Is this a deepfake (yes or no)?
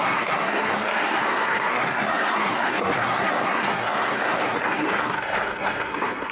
yes